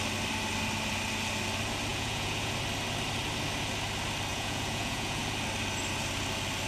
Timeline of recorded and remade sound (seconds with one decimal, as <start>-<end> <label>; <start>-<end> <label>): 0.0-1.9 recorded; 1.9-2.5 remade; 2.5-4.3 recorded; 4.3-5.2 remade; 5.2-6.7 recorded